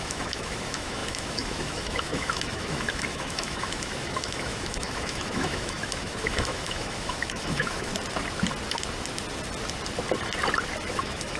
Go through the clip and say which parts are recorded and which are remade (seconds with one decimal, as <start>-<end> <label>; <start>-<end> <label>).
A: 0.0-7.9 remade; 7.9-10.9 recorded; 10.9-11.4 remade

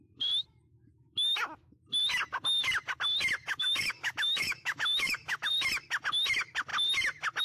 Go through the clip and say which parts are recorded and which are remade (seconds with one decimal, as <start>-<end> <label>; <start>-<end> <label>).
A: 0.0-0.7 recorded; 0.7-1.7 remade; 1.7-3.4 recorded; 3.4-5.5 remade; 5.5-7.4 recorded

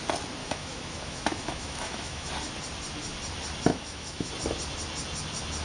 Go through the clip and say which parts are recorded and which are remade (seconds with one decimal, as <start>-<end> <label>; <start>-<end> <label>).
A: 0.0-0.4 recorded; 0.4-2.3 remade; 2.3-3.7 recorded; 3.7-4.3 remade; 4.3-5.6 recorded

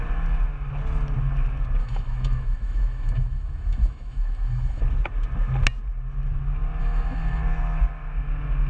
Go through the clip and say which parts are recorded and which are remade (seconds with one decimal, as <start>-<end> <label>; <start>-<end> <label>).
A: 0.0-1.8 recorded; 1.8-4.8 remade; 4.8-6.8 recorded; 6.8-7.4 remade; 7.4-8.7 recorded

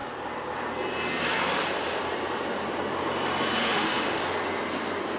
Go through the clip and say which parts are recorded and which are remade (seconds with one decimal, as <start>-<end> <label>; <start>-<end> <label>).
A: 0.0-3.6 recorded; 3.6-4.2 remade; 4.2-5.2 recorded

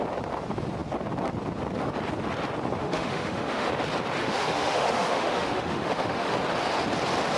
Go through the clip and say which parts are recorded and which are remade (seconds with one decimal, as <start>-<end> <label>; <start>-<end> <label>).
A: 0.0-2.8 recorded; 2.8-3.7 remade; 3.7-4.2 recorded; 4.2-6.3 remade; 6.3-7.4 recorded